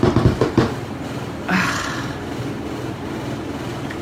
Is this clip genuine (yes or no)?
yes